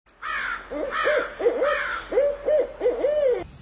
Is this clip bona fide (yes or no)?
yes